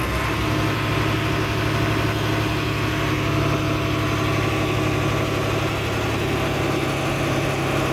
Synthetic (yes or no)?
no